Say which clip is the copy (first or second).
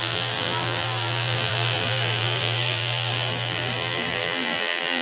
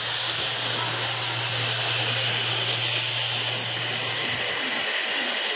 first